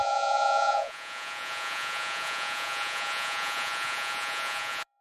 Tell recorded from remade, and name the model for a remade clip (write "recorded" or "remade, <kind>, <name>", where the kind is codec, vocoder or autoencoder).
remade, vocoder, Vocos